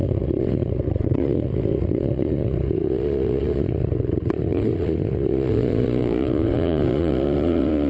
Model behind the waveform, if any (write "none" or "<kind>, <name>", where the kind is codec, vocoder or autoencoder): vocoder, Vocos